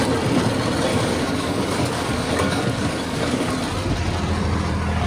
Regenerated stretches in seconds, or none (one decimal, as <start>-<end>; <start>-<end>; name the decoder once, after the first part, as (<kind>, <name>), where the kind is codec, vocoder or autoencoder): 0.9-3.5 (codec, DAC)